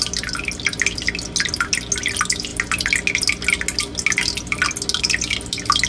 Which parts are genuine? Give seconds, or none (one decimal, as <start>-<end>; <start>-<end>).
0.0-5.9

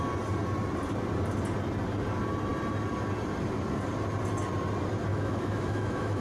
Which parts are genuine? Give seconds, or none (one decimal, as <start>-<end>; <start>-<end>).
0.0-5.1

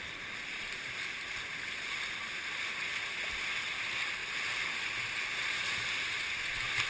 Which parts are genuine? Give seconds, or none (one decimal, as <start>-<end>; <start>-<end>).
0.0-6.9

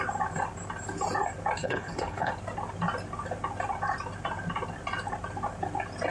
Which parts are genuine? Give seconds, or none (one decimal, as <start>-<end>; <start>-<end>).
0.0-1.6; 2.3-6.1